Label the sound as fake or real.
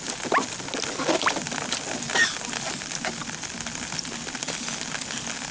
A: real